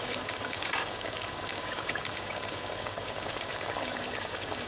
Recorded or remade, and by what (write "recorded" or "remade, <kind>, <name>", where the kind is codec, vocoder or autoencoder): remade, codec, DAC